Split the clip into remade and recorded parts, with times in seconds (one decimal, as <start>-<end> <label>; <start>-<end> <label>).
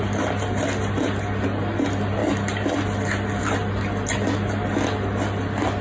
0.0-5.8 recorded